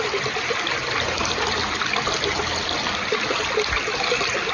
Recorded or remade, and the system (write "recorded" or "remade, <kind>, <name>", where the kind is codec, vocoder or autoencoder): recorded